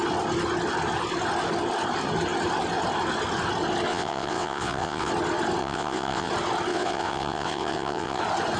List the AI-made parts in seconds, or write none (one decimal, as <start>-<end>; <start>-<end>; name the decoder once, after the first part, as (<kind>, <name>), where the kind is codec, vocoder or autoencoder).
3.9-5.1 (vocoder, WaveNeXt); 5.6-6.3; 6.7-8.2

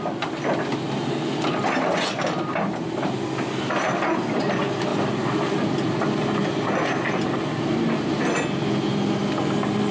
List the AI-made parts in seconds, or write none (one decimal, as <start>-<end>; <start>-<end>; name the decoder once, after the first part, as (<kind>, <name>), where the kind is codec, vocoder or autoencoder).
none

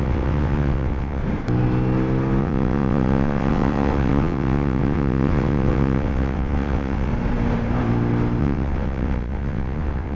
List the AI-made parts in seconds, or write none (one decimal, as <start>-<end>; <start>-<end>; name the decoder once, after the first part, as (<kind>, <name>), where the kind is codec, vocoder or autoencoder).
0.0-1.2 (vocoder, WaveNeXt); 2.4-7.1; 8.4-10.2

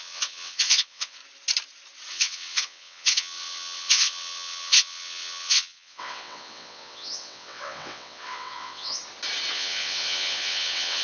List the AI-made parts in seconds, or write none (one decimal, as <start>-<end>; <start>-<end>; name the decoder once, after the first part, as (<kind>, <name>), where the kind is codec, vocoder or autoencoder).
0.0-1.2 (vocoder, WaveNeXt); 2.1-9.0; 9.5-11.0

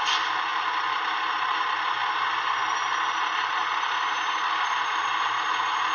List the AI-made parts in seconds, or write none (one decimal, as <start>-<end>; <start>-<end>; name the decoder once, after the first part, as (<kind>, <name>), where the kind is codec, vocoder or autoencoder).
none

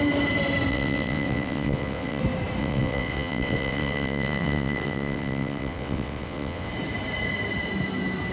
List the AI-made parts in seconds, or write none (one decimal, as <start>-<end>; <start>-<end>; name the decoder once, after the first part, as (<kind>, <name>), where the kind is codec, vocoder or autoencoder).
0.7-2.2 (vocoder, WaveNeXt); 2.6-6.7

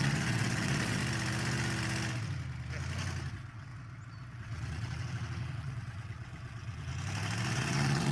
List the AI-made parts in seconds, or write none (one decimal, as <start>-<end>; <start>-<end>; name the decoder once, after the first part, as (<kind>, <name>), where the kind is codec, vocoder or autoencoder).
0.0-1.0 (vocoder, WaveNeXt); 3.3-3.7; 4.3-6.9; 7.5-8.1